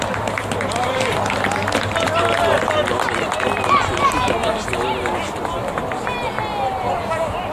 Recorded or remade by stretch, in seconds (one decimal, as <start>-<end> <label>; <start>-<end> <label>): 0.0-7.5 recorded